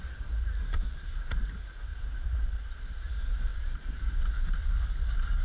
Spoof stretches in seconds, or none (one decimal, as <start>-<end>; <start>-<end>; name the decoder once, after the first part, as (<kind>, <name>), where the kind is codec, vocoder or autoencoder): none